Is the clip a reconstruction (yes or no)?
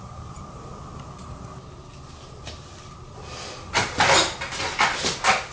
no